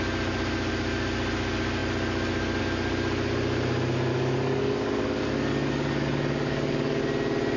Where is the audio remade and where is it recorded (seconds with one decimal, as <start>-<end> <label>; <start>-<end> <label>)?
0.0-4.1 recorded; 4.1-7.0 remade; 7.0-7.6 recorded